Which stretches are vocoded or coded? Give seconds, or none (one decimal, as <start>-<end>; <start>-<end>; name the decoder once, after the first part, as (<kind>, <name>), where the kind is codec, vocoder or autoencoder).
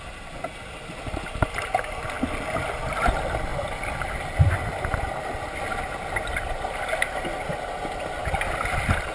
none